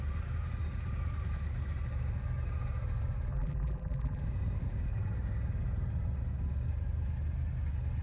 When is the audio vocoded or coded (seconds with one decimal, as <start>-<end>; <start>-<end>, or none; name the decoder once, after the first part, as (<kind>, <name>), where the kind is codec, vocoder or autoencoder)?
3.3-4.2 (vocoder, BigVGAN v2)

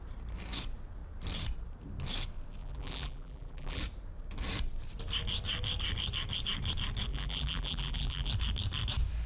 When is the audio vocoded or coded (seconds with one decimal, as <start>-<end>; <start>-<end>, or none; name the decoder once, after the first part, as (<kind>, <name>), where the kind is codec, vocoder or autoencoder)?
2.6-3.8 (vocoder, BigVGAN v2); 7.1-8.3

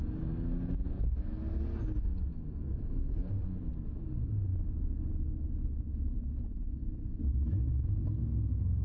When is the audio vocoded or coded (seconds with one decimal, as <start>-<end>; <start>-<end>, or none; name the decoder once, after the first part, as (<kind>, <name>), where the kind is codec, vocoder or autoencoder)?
none

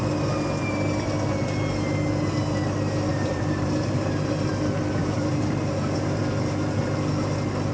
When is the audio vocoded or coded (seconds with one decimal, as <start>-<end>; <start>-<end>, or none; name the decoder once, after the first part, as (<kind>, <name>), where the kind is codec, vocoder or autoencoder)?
3.1-4.5 (vocoder, BigVGAN v2); 5.0-6.2

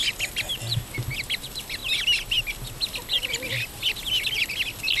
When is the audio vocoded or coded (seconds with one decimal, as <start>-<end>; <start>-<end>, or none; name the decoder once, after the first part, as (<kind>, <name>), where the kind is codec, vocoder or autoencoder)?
1.8-2.4 (vocoder, BigVGAN v2)